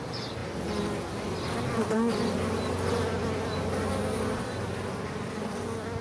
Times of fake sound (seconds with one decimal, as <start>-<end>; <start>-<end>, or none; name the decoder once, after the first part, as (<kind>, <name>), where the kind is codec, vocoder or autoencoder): none